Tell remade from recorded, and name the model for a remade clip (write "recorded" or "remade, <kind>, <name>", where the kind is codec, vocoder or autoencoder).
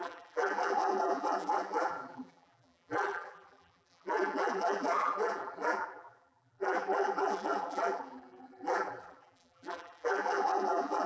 remade, vocoder, BigVGAN v2